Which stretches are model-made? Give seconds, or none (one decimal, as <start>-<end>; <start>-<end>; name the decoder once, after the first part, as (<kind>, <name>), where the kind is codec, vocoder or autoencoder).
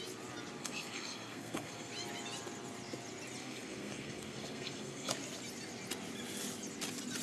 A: 0.6-1.9 (codec, SNAC); 3.4-5.1